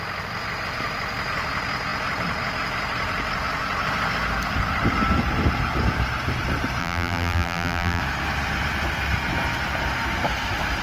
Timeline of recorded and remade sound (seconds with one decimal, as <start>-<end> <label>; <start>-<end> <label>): 0.0-6.8 recorded; 6.8-8.0 remade; 8.0-10.8 recorded